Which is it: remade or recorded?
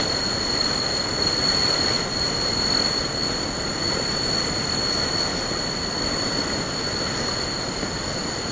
recorded